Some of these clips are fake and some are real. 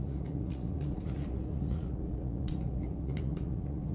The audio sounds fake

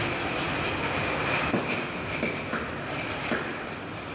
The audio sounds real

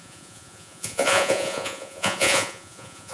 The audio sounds fake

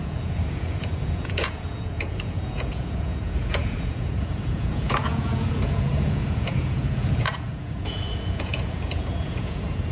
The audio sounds fake